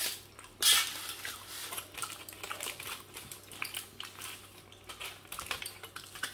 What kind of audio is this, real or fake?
real